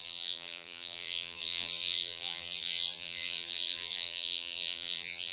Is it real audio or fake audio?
fake